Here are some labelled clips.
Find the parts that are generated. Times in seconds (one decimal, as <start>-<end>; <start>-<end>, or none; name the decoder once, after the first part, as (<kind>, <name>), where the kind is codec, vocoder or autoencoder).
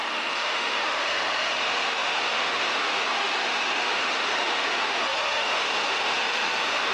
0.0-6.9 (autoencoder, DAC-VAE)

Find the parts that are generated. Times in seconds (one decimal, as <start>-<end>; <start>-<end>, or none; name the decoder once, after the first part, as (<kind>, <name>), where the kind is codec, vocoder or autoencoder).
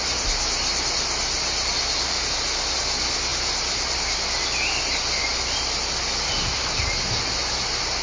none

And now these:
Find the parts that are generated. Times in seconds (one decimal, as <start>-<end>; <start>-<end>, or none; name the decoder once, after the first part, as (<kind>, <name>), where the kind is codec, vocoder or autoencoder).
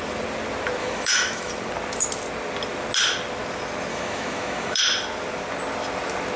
0.8-1.5 (autoencoder, DAC-VAE); 3.9-4.8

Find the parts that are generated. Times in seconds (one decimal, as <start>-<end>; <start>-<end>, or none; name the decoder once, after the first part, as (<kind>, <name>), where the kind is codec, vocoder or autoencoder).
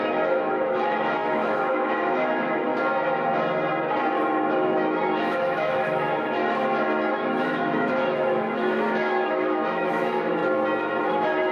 0.0-2.7 (autoencoder, DAC-VAE); 4.5-6.4; 7.1-10.4; 11.0-11.5